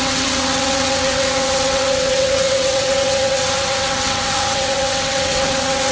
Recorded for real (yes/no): no